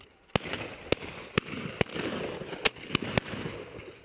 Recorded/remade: recorded